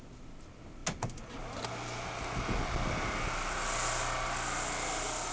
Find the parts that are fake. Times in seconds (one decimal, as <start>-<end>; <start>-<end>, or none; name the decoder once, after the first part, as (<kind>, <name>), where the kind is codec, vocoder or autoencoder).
none